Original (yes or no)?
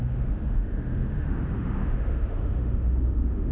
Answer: no